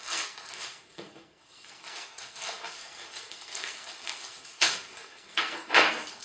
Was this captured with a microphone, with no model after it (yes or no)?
no